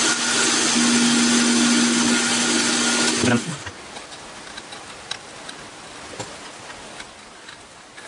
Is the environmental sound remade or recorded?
recorded